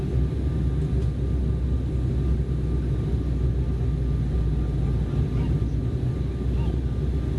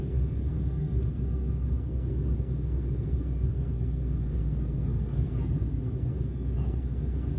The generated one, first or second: second